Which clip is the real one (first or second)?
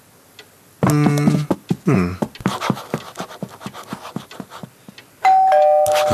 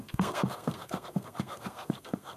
first